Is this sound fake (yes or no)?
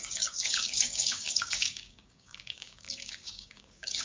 yes